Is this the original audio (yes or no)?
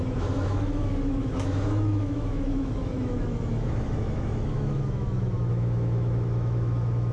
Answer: no